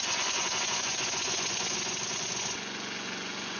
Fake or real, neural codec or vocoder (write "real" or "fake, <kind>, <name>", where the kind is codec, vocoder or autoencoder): fake, vocoder, Vocos